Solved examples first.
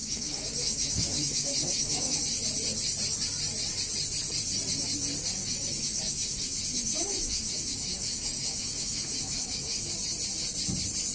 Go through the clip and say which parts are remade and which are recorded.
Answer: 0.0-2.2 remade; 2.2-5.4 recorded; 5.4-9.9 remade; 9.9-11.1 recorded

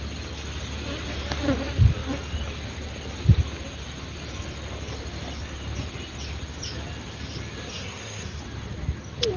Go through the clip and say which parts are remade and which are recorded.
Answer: 0.0-7.7 recorded; 7.7-8.4 remade; 8.4-9.4 recorded

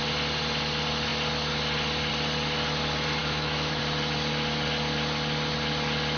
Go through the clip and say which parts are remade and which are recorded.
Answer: 0.0-3.2 recorded; 3.2-3.8 remade; 3.8-6.2 recorded

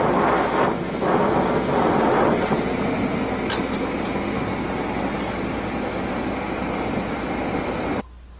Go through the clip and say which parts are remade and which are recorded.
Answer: 0.0-1.8 recorded; 1.8-2.6 remade; 2.6-8.4 recorded

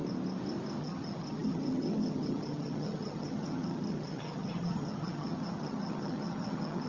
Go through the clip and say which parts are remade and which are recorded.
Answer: 0.0-0.8 recorded; 0.8-6.9 remade

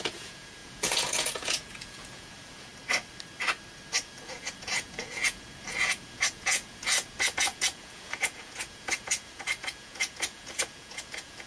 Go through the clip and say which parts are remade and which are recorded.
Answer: 0.0-2.7 remade; 2.7-4.0 recorded; 4.0-11.5 remade